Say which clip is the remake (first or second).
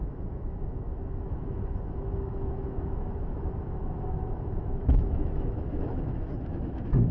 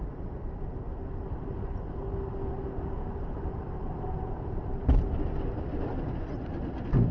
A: first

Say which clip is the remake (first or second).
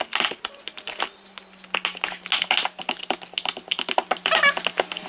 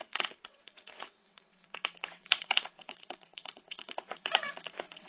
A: second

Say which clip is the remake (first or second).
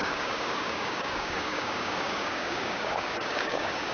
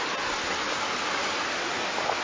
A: first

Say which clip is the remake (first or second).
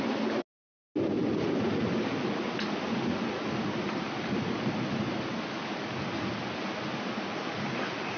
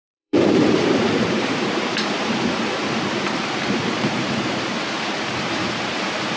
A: second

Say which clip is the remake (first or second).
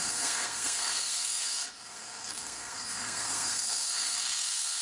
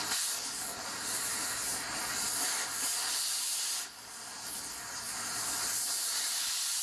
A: first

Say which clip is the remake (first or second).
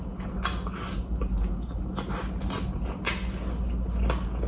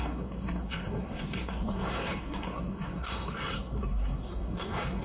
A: second